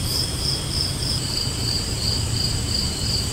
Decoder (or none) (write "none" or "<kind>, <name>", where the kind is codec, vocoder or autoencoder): vocoder, BigVGAN v2